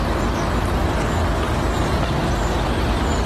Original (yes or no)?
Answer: yes